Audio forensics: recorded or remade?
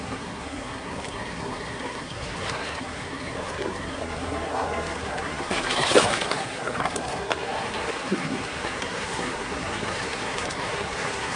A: remade